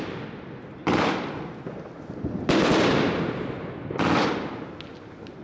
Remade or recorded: recorded